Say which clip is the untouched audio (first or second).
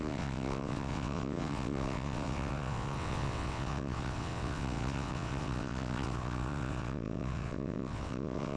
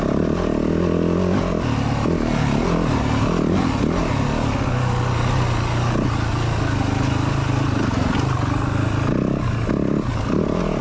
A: second